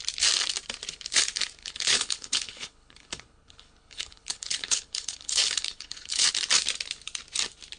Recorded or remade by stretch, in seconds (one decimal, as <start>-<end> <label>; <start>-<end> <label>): 0.0-1.6 recorded; 1.6-6.3 remade; 6.3-7.8 recorded